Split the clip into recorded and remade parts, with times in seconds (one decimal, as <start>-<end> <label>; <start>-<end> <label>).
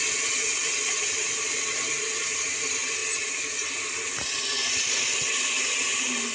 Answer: 0.0-4.6 recorded; 4.6-5.3 remade; 5.3-6.3 recorded